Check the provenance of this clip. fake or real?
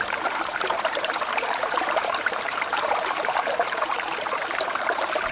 fake